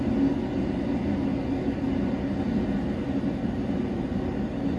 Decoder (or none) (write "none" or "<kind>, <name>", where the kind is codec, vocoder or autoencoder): none